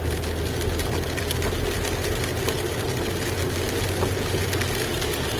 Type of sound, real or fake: real